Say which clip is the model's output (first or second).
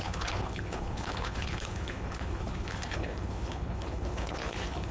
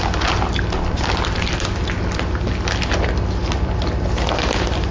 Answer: first